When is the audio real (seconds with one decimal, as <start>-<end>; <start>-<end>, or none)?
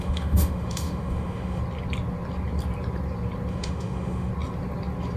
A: 1.6-3.5; 4.3-5.2